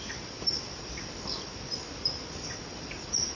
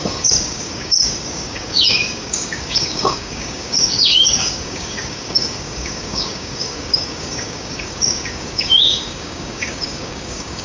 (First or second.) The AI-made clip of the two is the second